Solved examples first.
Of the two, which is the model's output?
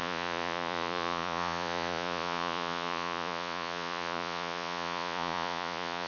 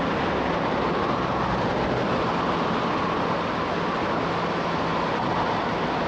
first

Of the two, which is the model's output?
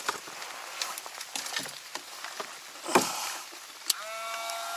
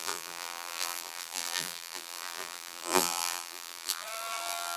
second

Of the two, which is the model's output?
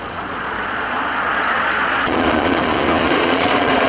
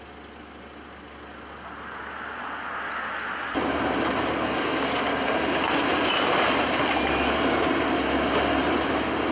first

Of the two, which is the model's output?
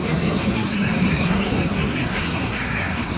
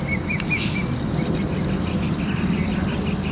first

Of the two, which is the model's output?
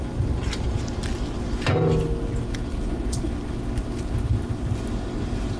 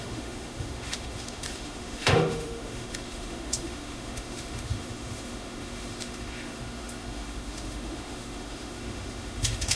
second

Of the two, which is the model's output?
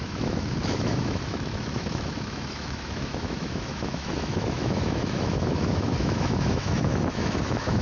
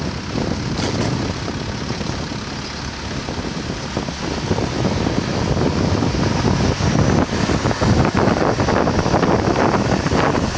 first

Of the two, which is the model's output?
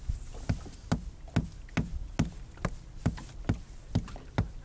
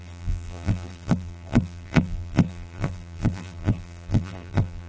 second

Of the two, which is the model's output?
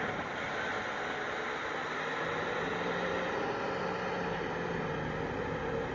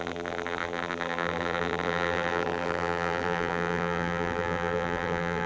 second